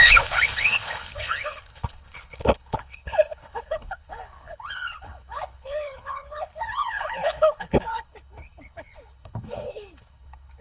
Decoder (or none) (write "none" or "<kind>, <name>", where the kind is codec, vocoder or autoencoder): codec, HILCodec